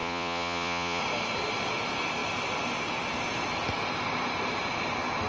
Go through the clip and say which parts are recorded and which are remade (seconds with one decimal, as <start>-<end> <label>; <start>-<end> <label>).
0.0-1.0 remade; 1.0-5.3 recorded